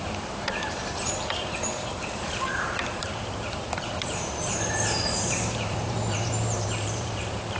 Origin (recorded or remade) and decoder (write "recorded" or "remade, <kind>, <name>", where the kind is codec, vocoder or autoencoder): remade, vocoder, BigVGAN v2